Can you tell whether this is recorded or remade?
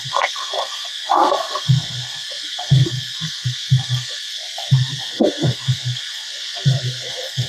remade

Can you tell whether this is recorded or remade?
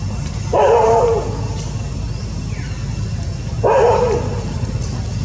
recorded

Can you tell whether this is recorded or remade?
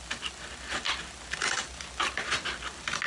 recorded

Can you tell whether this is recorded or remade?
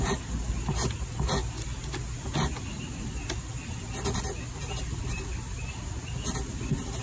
recorded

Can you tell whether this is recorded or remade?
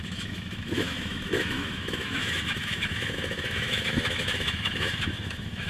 remade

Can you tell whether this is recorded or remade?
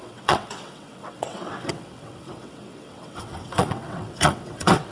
remade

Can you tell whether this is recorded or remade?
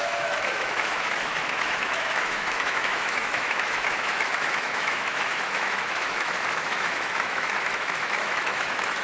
remade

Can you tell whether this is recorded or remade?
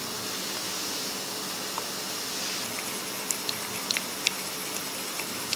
recorded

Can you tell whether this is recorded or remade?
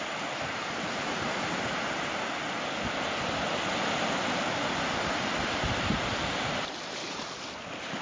recorded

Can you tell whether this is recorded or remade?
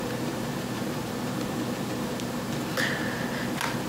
recorded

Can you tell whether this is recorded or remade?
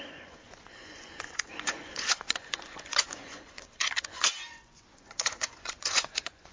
remade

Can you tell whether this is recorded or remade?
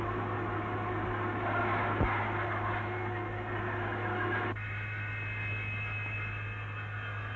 recorded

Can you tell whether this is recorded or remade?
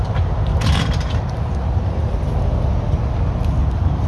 recorded